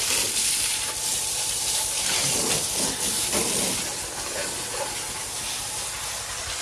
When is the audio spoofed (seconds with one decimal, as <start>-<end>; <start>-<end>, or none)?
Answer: 1.1-2.5